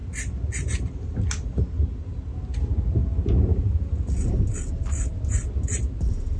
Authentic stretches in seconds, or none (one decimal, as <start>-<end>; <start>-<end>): 0.0-6.4